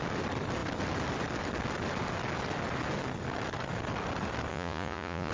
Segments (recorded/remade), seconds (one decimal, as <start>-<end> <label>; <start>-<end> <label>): 0.0-4.5 recorded; 4.5-5.3 remade